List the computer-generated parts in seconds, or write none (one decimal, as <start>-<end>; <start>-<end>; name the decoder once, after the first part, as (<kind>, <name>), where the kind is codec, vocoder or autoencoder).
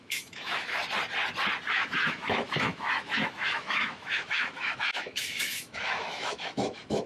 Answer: 0.0-0.8 (autoencoder, DAC-VAE); 1.7-7.1